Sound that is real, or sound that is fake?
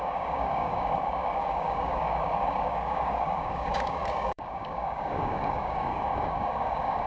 fake